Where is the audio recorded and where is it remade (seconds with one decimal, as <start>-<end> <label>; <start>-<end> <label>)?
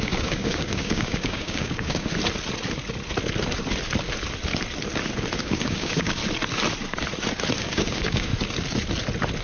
0.0-2.1 remade; 2.1-5.4 recorded; 5.4-6.2 remade; 6.2-7.6 recorded; 7.6-8.3 remade; 8.3-9.4 recorded